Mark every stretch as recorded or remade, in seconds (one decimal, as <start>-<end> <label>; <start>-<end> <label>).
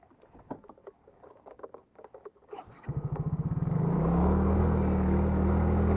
0.0-1.0 recorded; 1.0-4.6 remade; 4.6-6.0 recorded